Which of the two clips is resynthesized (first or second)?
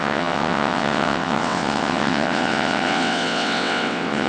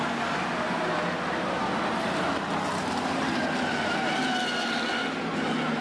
first